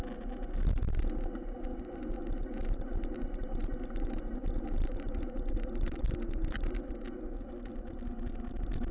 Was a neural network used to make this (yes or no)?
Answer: no